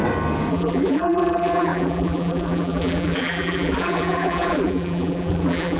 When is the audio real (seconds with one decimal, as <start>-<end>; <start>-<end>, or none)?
0.0-0.5